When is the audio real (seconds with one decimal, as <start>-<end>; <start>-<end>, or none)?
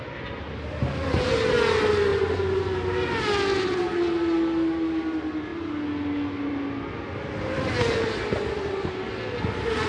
0.0-9.9